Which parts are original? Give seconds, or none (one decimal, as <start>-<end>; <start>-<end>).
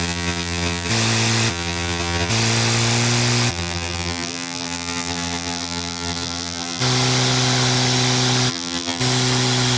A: 0.9-1.5; 2.3-3.5; 6.8-8.5; 9.0-9.8